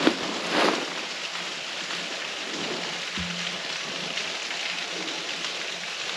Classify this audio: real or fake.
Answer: real